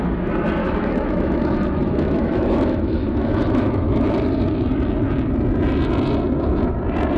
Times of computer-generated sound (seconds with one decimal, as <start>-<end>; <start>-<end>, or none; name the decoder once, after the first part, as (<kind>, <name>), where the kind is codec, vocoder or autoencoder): 0.6-4.3 (autoencoder, DAC-VAE)